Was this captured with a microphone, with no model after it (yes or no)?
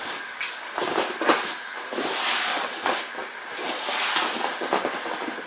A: yes